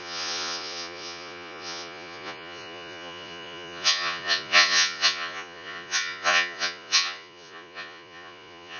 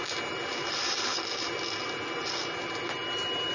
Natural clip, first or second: second